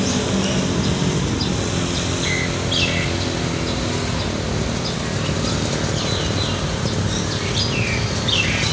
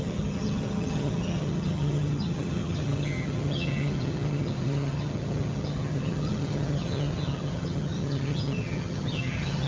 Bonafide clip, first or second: first